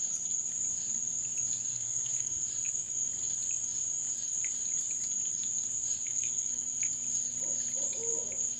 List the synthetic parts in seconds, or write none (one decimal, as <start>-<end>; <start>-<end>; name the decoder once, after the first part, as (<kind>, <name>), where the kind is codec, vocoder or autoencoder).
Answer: 1.7-2.3 (codec, SNAC); 6.0-6.7